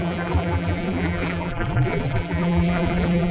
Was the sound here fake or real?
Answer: fake